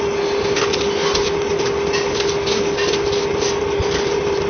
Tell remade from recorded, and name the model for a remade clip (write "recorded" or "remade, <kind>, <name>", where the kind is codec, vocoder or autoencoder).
recorded